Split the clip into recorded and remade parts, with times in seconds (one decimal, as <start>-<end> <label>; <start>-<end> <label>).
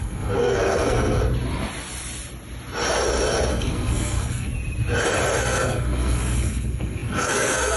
0.0-1.2 remade; 1.2-3.5 recorded; 3.5-4.5 remade; 4.5-5.4 recorded; 5.4-7.8 remade